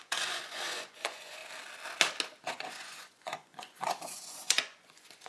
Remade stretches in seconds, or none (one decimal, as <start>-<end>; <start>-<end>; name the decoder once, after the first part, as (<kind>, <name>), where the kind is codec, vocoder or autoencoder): 0.0-1.4 (vocoder, Vocos); 2.5-5.3